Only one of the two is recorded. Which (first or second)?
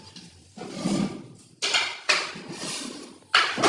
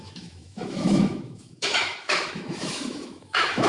first